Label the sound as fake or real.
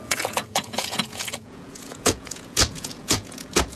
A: fake